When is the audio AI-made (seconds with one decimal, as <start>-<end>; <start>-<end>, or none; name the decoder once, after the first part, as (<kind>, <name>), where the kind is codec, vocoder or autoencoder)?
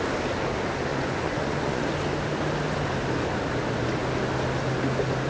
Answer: 0.9-1.8 (vocoder, Vocos)